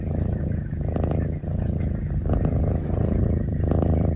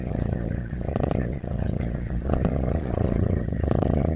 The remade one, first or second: second